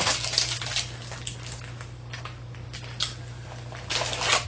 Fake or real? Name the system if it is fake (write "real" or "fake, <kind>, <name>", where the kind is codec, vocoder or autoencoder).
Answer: real